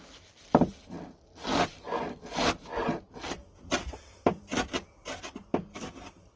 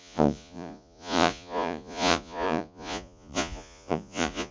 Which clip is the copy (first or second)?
second